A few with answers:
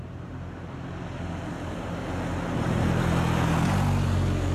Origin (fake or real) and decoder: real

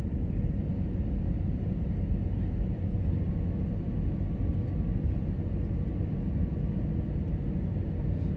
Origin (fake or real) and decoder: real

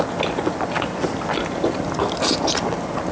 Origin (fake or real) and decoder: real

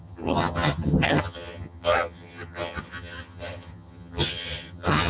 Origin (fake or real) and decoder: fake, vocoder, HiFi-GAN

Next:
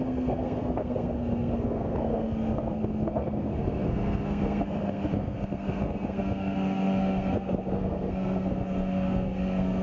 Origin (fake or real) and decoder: fake, codec, SNAC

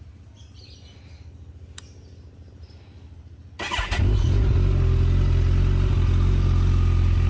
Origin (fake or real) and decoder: real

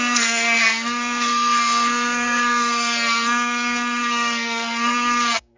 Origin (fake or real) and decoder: fake, codec, SNAC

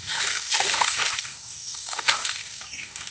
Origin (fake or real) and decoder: fake, codec, DAC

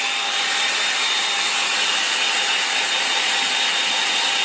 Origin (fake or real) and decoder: real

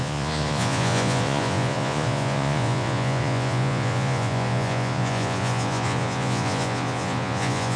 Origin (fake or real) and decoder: fake, vocoder, Vocos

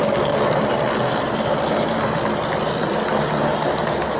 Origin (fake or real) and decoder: real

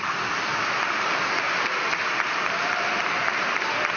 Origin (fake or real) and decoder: real